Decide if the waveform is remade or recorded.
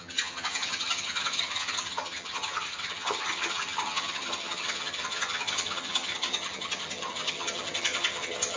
remade